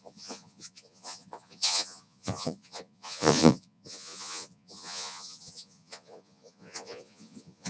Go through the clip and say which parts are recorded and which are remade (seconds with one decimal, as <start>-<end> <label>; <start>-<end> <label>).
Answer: 0.0-7.7 remade